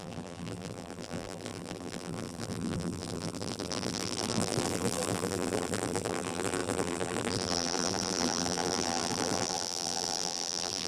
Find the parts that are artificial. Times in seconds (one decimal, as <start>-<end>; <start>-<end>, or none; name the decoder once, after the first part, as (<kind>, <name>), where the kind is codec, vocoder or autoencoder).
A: 0.0-10.9 (vocoder, BigVGAN v2)